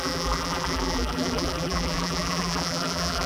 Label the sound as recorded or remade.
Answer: remade